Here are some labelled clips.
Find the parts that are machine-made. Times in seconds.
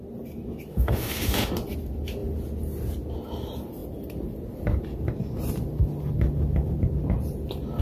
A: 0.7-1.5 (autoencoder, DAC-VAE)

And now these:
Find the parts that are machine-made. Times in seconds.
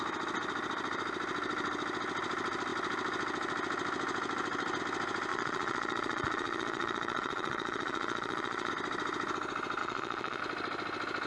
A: 5.3-8.7 (vocoder, Vocos); 9.8-10.4